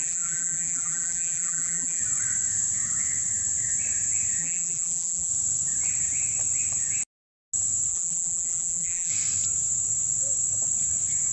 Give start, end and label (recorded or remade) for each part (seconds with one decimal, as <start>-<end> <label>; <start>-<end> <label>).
0.0-2.0 remade; 2.0-4.4 recorded; 4.4-5.3 remade; 5.3-7.9 recorded; 7.9-9.1 remade; 9.1-11.3 recorded